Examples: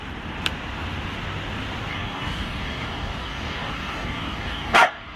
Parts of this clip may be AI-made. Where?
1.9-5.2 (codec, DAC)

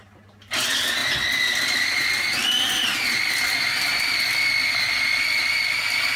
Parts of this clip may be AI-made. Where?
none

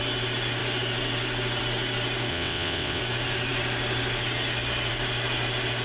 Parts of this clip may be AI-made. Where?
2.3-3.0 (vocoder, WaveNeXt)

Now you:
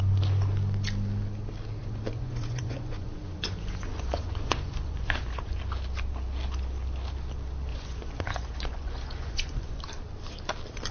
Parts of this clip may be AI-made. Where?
1.8-5.6 (vocoder, Vocos); 7.7-9.8